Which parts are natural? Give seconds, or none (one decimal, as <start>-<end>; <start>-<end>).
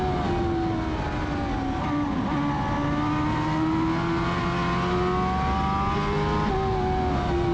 0.0-7.5